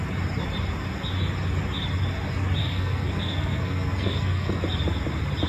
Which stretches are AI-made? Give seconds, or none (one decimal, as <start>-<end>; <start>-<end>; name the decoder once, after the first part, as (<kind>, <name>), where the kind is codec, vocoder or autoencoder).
2.6-4.6 (codec, SNAC)